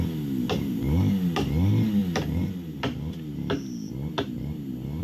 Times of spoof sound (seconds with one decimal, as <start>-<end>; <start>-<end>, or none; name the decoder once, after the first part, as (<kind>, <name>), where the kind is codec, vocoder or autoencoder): none